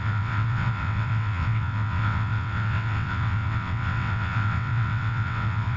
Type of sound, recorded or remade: remade